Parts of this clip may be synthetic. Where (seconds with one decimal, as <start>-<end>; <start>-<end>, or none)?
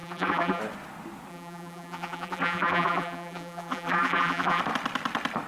0.0-0.6; 1.3-4.6